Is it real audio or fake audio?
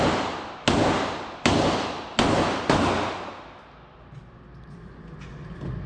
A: real